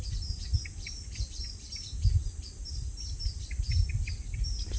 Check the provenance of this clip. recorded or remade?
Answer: recorded